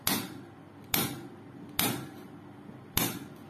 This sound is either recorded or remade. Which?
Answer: recorded